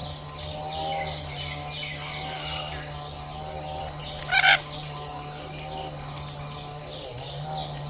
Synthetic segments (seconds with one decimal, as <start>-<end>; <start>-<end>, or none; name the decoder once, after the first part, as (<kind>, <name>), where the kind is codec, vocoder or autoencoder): none